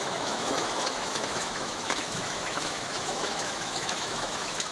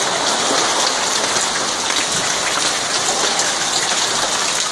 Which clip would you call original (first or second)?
second